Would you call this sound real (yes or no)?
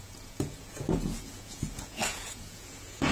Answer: no